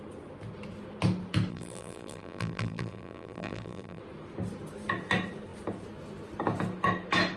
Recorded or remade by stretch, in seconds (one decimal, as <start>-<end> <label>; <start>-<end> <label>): 0.0-1.5 recorded; 1.5-4.0 remade; 4.0-7.4 recorded